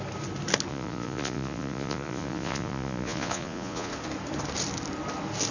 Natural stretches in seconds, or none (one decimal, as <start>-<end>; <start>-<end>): 0.0-0.7; 3.9-5.5